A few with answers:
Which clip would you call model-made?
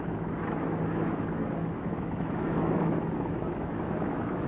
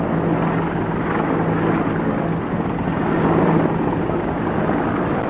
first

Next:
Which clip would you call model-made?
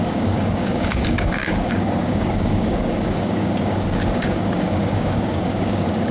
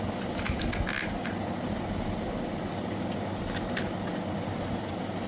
first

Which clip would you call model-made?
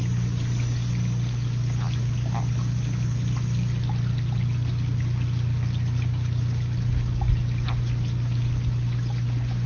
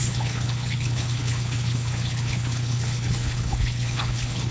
second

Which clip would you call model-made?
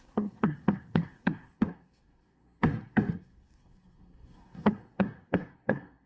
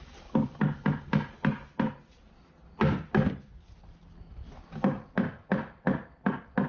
first